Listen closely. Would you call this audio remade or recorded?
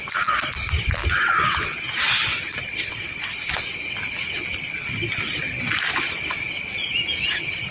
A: recorded